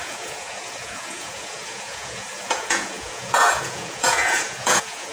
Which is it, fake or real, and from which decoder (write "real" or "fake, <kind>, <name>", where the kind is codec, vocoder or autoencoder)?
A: fake, vocoder, Vocos